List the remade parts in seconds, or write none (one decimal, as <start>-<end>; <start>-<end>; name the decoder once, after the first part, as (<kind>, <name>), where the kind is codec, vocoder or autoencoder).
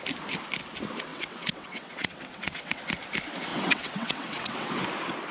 1.1-2.8 (vocoder, WaveNeXt); 3.5-4.7